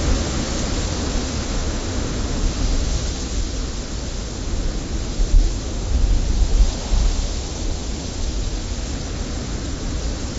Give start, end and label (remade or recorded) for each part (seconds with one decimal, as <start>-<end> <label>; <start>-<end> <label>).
0.0-1.2 recorded; 1.2-1.9 remade; 1.9-10.4 recorded